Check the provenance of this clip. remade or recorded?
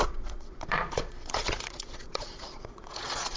remade